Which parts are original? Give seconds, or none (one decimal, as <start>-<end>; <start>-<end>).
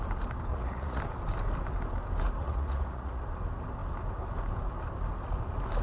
0.0-0.5; 1.0-2.4; 3.2-5.8